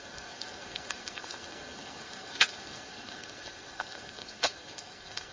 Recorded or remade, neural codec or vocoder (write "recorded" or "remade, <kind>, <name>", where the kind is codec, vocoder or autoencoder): remade, codec, SNAC